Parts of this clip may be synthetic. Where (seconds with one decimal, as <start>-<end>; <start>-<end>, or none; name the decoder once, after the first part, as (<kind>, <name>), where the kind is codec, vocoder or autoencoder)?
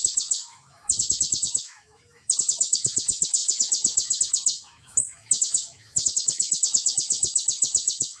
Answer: 0.0-8.2 (autoencoder, DAC-VAE)